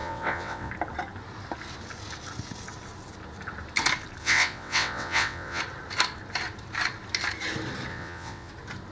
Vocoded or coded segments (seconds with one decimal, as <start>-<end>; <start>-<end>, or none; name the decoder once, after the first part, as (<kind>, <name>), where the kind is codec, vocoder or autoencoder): 0.0-0.7 (vocoder, WaveNeXt); 4.2-5.6; 7.9-8.5